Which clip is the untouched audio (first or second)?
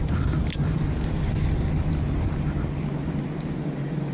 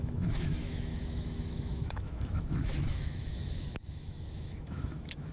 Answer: first